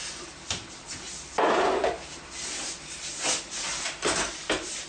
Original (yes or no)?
yes